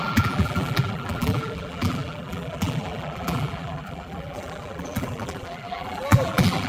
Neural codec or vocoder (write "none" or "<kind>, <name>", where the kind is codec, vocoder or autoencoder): vocoder, BigVGAN v2